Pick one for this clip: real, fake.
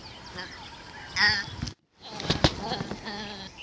real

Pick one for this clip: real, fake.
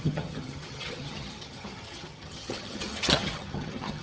fake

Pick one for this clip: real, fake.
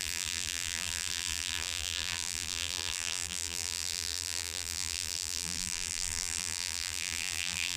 fake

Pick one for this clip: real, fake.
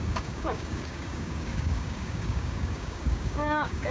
fake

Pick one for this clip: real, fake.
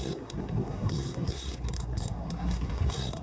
fake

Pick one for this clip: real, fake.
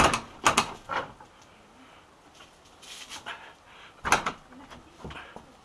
real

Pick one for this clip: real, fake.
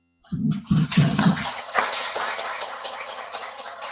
fake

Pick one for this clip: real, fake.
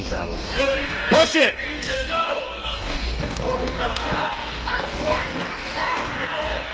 fake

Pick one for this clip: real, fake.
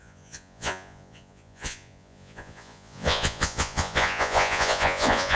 fake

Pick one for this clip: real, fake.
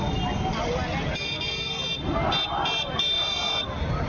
real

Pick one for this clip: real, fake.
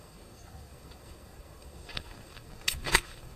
fake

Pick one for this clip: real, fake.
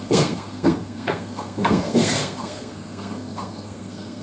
fake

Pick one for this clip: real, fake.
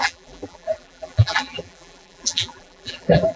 fake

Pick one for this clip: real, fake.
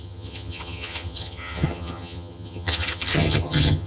fake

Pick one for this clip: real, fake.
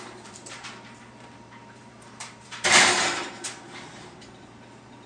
fake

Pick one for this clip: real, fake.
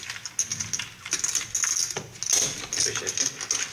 real